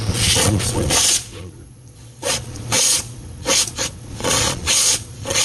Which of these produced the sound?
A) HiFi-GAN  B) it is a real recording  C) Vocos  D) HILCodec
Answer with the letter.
C